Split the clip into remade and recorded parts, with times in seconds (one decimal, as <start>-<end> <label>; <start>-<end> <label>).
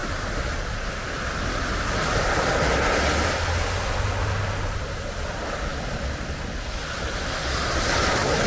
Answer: 0.0-8.5 recorded